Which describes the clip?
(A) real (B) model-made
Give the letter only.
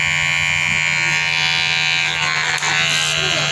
A